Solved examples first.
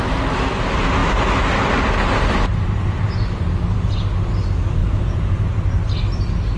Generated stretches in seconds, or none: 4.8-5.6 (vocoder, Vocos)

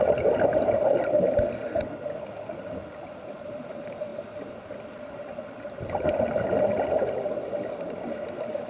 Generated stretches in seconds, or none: none

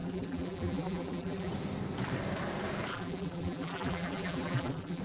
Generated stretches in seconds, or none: 0.0-1.5 (vocoder, BigVGAN v2); 2.9-5.0

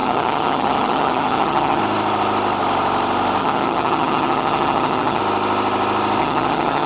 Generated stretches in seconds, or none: 0.0-1.8 (vocoder, HiFi-GAN); 3.4-5.2; 6.2-6.9